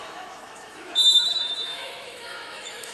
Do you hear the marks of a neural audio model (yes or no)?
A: yes